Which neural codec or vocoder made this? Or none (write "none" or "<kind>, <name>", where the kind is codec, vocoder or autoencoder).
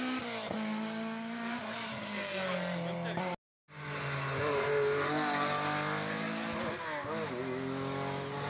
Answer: none